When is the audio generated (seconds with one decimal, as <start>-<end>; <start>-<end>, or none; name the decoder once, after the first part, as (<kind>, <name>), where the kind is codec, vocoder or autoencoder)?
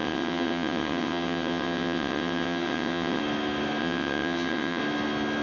0.0-3.2 (vocoder, WaveNeXt); 3.8-4.8